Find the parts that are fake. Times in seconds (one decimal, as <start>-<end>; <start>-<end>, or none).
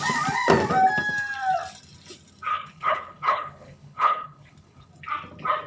2.5-4.9